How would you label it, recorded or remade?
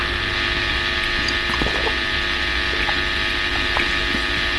recorded